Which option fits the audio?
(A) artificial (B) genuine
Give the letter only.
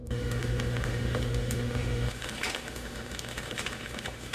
A